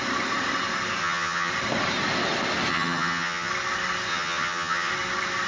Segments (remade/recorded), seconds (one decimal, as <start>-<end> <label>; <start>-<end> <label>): 0.0-1.0 recorded; 1.0-1.5 remade; 1.5-2.7 recorded; 2.7-3.5 remade; 3.5-4.1 recorded; 4.1-4.9 remade; 4.9-5.5 recorded